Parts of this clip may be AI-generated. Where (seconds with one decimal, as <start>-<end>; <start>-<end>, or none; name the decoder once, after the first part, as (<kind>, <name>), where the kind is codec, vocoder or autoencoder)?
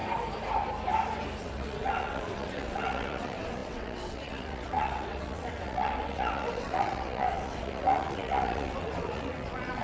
1.4-9.8 (vocoder, WaveNeXt)